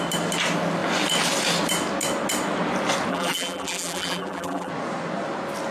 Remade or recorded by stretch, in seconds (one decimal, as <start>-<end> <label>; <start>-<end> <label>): 0.0-3.1 recorded; 3.1-4.7 remade; 4.7-5.7 recorded